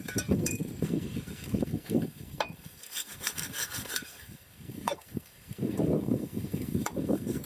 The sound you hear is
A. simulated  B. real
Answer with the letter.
A